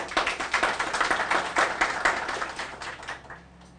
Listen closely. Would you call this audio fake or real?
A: real